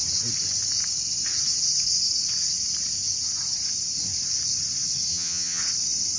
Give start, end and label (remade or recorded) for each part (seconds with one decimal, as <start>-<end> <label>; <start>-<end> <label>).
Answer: 0.0-5.1 recorded; 5.1-5.6 remade; 5.6-6.2 recorded